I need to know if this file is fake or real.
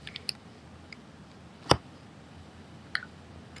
real